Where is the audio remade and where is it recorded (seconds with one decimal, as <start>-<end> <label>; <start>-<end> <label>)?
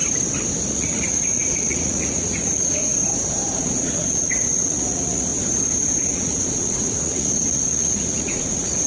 0.0-0.7 recorded; 0.7-2.9 remade; 2.9-3.6 recorded; 3.6-5.3 remade; 5.3-6.0 recorded; 6.0-8.9 remade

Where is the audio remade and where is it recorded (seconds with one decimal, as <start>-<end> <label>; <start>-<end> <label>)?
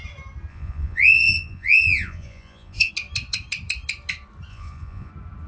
0.0-0.5 recorded; 0.5-2.9 remade; 2.9-4.5 recorded; 4.5-5.1 remade; 5.1-5.5 recorded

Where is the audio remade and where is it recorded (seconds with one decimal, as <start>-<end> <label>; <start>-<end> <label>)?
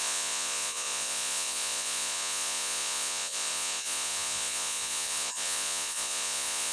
0.0-6.7 remade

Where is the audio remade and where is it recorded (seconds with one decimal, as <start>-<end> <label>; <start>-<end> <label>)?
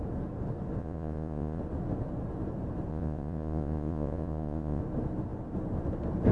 0.0-0.8 recorded; 0.8-1.6 remade; 1.6-2.9 recorded; 2.9-4.8 remade; 4.8-6.3 recorded